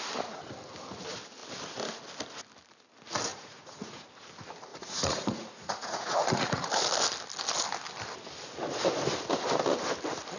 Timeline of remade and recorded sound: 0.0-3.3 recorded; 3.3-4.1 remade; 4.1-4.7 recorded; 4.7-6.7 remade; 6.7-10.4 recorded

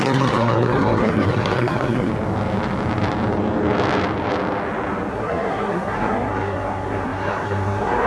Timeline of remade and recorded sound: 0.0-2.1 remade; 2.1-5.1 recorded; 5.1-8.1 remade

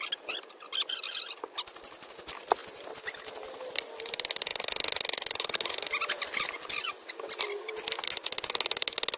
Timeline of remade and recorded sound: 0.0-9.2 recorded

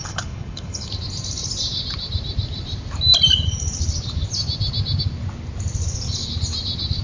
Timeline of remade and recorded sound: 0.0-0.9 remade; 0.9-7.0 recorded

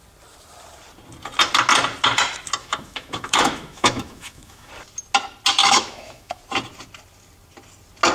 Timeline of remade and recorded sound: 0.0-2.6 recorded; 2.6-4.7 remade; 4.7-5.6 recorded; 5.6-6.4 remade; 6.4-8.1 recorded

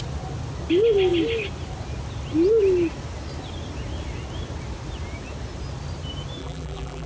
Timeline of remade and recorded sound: 0.0-6.4 recorded; 6.4-7.1 remade

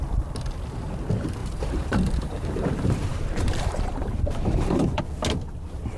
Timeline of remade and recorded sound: 0.0-1.4 recorded; 1.4-5.0 remade; 5.0-6.0 recorded